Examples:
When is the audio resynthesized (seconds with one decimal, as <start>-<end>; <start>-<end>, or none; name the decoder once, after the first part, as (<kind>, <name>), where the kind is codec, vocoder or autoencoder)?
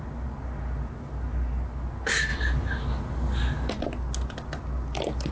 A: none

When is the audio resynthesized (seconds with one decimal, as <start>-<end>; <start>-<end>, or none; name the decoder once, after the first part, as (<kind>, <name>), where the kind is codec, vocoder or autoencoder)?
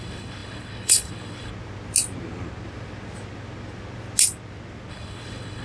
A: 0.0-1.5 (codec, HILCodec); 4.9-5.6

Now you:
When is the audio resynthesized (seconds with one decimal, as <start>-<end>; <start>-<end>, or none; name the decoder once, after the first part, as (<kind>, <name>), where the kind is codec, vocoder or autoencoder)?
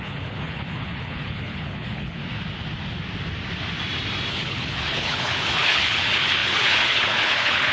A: 0.0-2.2 (codec, HILCodec); 4.3-7.7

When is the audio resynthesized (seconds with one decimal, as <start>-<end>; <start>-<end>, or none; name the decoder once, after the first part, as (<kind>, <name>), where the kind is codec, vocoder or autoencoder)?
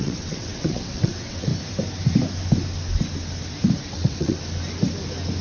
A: 0.0-1.5 (vocoder, WaveNeXt); 3.9-4.4